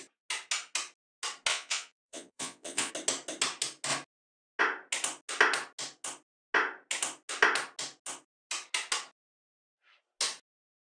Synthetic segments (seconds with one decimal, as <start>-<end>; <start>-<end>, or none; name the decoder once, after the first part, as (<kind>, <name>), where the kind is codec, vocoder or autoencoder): 1.5-2.9 (vocoder, Vocos)